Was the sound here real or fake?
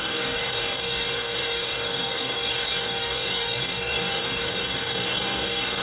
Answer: fake